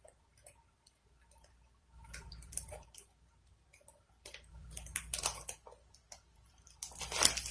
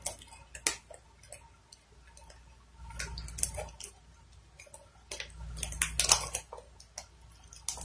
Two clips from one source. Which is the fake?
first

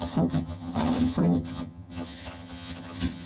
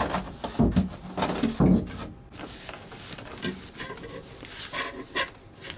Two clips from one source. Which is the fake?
first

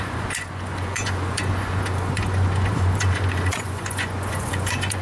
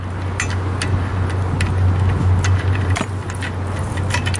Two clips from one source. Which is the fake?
first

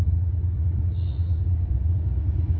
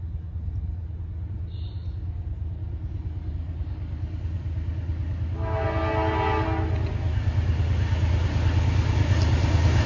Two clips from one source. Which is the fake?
first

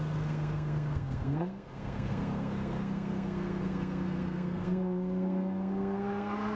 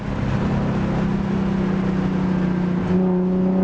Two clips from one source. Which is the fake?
first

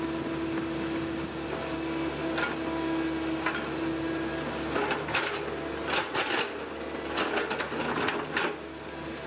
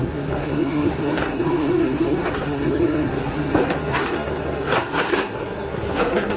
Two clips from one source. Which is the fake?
second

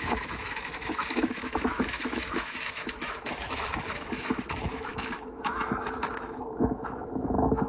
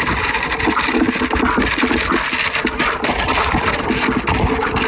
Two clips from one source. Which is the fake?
first